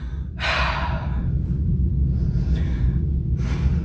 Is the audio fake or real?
real